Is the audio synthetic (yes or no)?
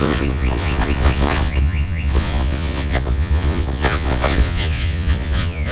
yes